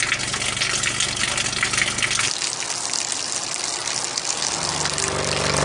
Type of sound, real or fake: real